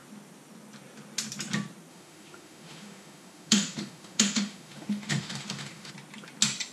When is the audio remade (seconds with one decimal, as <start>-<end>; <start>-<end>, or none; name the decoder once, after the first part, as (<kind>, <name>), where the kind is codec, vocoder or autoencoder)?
1.9-5.9 (autoencoder, DAC-VAE)